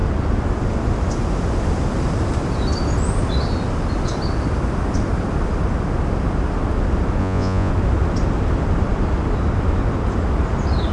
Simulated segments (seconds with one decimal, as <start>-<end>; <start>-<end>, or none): 7.2-7.7